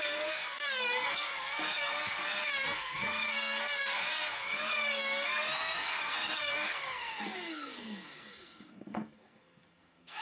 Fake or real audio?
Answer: fake